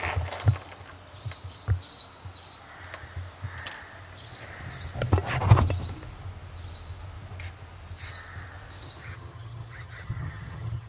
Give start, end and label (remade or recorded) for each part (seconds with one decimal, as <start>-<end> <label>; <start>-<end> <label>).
0.0-9.0 recorded; 9.0-10.9 remade